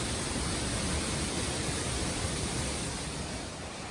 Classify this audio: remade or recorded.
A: recorded